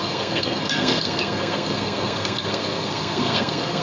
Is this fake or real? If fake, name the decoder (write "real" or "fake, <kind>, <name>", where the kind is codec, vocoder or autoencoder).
fake, codec, SNAC